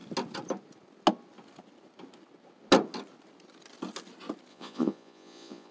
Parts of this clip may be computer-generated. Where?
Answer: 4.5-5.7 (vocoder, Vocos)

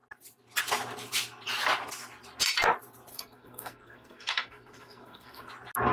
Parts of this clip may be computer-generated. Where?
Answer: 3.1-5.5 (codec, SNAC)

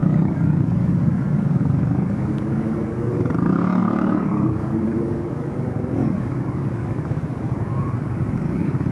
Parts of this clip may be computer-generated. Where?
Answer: 0.0-8.9 (codec, DAC)